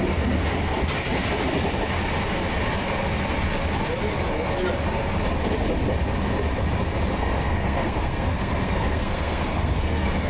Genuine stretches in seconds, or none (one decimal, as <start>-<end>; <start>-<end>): 0.0-7.1